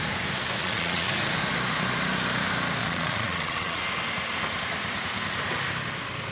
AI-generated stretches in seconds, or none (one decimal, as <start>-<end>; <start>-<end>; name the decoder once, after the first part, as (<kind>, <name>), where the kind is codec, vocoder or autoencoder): 0.6-1.1 (vocoder, Vocos); 2.8-3.8

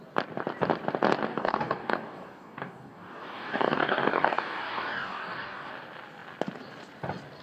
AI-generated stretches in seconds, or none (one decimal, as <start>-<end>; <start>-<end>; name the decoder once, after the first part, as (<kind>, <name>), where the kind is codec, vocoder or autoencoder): 1.3-5.7 (codec, DAC)

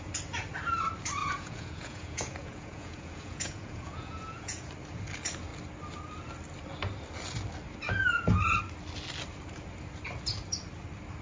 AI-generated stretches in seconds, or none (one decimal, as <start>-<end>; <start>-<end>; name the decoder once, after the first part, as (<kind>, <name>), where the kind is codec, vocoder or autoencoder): 1.2-4.7 (vocoder, Vocos)

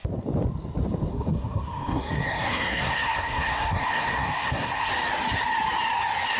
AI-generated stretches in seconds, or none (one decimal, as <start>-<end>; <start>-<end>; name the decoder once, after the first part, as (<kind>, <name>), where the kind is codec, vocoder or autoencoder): 1.1-4.9 (codec, SNAC)

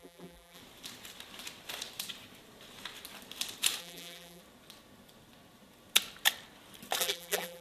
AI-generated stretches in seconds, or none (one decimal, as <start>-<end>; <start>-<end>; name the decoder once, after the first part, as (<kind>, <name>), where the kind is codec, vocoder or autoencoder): 0.0-0.6 (vocoder, BigVGAN v2); 3.8-4.4; 7.0-7.6

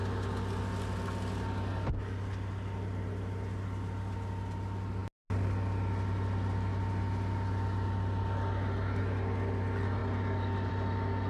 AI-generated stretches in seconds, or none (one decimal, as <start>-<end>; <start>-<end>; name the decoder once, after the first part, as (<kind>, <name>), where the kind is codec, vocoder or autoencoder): none